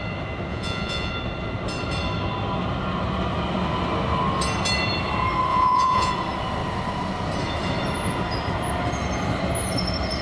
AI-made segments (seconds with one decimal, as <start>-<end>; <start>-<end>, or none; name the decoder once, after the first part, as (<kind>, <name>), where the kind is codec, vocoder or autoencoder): 0.5-1.1 (vocoder, Vocos); 5.5-6.1